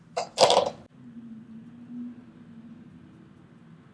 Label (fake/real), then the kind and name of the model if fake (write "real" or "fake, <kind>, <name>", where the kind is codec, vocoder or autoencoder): real